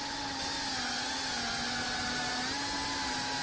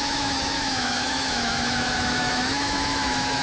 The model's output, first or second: second